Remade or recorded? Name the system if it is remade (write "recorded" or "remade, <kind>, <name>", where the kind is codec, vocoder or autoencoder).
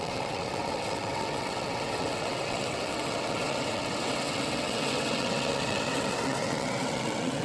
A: remade, vocoder, WaveNeXt